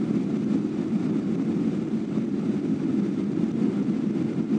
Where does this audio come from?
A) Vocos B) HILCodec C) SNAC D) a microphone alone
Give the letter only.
D